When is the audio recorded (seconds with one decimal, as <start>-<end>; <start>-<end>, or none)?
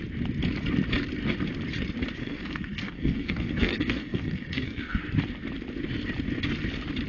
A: 0.0-2.2; 5.0-7.1